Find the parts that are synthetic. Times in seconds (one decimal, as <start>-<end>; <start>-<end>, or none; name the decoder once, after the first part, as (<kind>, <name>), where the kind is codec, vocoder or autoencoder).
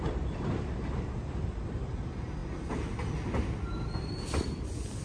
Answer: none